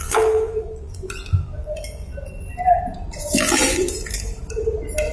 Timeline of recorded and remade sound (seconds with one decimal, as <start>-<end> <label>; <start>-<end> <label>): 0.0-2.1 remade; 2.1-3.2 recorded; 3.2-4.3 remade; 4.3-5.1 recorded